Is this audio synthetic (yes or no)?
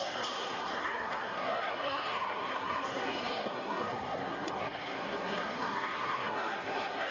yes